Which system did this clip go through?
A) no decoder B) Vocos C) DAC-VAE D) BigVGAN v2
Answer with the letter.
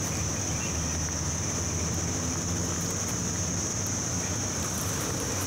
A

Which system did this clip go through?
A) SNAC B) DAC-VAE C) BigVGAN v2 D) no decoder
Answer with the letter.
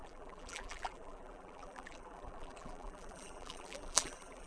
C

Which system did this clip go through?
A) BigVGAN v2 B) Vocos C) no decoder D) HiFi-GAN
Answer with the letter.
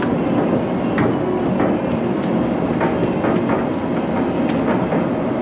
C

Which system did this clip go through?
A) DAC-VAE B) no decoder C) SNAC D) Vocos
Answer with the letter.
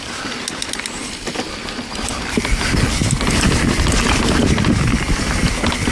B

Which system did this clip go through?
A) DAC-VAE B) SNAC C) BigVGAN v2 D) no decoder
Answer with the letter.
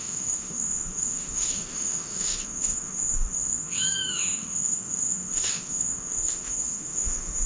A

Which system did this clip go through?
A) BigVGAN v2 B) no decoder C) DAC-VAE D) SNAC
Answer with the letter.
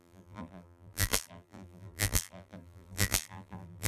A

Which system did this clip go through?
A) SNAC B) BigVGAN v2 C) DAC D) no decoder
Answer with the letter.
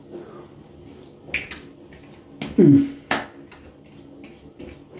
D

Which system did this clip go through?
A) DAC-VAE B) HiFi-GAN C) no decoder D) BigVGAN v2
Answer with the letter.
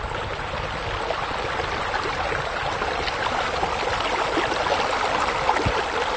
C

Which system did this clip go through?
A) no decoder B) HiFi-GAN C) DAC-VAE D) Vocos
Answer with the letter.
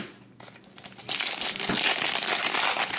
A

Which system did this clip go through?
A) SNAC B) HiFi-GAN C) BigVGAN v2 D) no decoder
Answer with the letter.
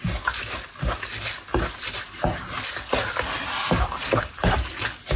D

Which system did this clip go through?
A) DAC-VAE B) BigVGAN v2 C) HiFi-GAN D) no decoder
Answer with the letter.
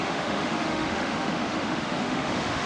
A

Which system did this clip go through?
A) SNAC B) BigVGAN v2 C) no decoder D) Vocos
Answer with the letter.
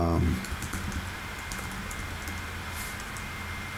C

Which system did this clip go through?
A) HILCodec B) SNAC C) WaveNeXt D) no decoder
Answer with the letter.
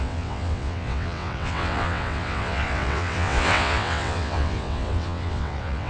C